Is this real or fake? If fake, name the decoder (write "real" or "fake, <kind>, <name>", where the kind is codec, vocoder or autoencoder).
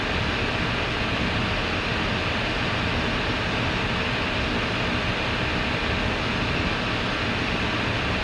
real